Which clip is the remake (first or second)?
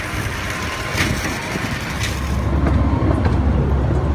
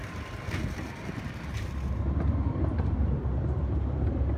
second